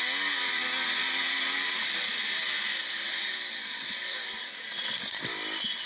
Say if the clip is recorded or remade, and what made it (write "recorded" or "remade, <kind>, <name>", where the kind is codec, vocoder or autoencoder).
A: recorded